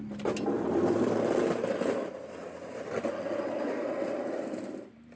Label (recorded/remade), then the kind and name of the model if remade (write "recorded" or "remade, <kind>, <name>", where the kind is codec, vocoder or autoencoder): recorded